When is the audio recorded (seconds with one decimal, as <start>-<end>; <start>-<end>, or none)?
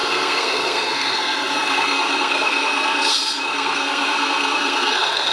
none